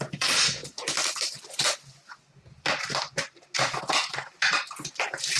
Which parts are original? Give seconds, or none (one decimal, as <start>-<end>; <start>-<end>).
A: none